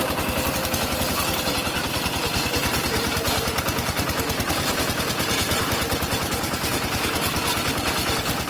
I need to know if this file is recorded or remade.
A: remade